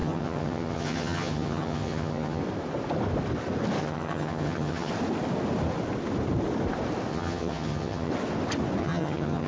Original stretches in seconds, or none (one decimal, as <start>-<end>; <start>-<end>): 2.4-3.8; 4.9-7.1; 8.1-8.8